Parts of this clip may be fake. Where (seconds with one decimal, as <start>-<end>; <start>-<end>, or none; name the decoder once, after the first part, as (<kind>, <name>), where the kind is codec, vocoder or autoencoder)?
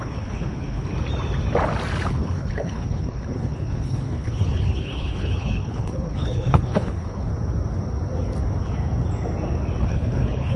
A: 0.0-0.9 (codec, HILCodec); 2.1-7.3; 9.8-10.6